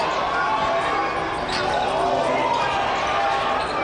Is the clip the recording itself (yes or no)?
yes